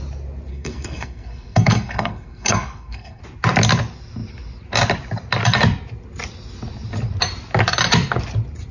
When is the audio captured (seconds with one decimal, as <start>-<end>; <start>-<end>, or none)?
0.0-0.5; 3.2-8.7